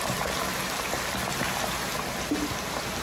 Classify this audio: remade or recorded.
recorded